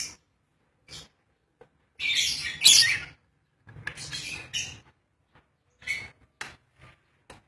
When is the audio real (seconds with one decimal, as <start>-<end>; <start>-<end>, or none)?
0.0-7.5

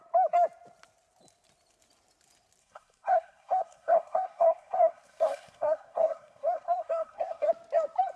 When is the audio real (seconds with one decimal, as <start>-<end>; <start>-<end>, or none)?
0.0-2.6; 7.5-8.2